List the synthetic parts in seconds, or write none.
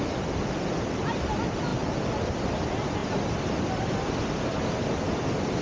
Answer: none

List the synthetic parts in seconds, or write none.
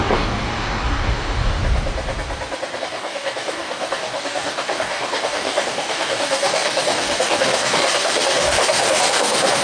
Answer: 0.0-1.6 (codec, DAC); 2.8-9.6